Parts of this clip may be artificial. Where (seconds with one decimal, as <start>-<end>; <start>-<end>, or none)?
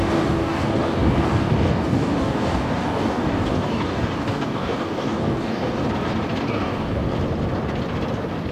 0.0-5.8; 6.4-7.0